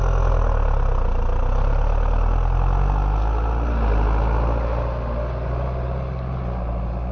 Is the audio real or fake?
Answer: real